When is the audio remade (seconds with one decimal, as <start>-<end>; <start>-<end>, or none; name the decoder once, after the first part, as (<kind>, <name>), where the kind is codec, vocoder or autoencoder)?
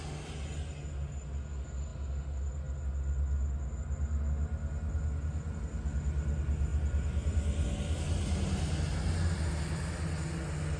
none